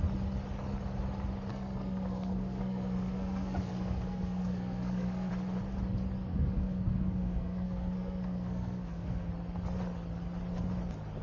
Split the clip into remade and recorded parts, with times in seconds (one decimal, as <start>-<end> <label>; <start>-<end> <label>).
0.0-1.5 recorded; 1.5-5.3 remade; 5.3-6.3 recorded; 6.3-9.3 remade; 9.3-11.2 recorded